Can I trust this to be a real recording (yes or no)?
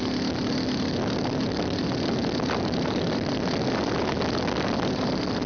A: yes